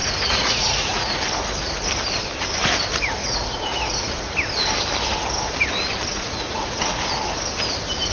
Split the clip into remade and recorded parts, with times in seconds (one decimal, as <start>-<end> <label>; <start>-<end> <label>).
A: 0.0-1.2 remade; 1.2-3.2 recorded; 3.2-4.2 remade; 4.2-6.2 recorded; 6.2-7.1 remade; 7.1-8.1 recorded